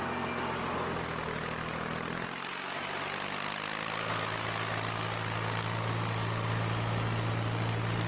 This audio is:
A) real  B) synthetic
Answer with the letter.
A